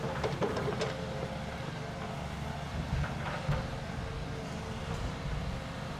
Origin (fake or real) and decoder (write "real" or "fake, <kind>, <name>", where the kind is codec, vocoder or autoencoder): real